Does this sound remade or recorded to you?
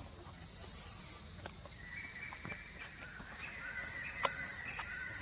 recorded